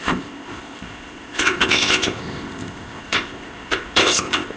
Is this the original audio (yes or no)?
no